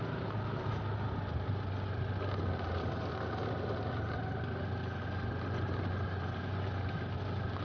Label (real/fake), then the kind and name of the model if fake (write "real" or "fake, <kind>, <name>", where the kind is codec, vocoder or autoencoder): real